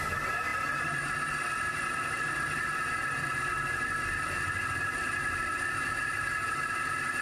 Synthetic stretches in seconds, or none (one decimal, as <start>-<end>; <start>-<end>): none